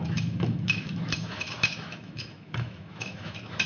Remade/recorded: remade